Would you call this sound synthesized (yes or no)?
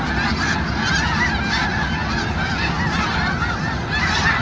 no